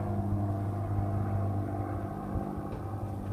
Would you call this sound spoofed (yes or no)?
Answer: no